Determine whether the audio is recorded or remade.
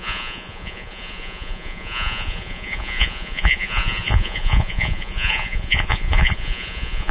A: remade